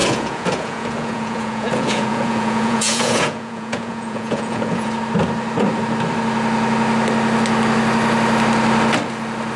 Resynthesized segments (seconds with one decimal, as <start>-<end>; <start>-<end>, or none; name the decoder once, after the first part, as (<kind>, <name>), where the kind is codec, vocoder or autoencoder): 0.0-4.9 (vocoder, Vocos)